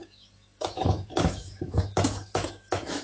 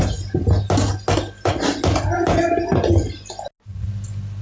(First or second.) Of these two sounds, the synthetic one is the first